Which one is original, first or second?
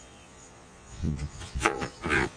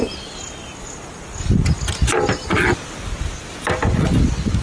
second